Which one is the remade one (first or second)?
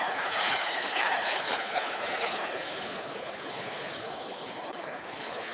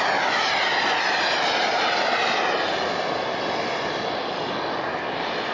first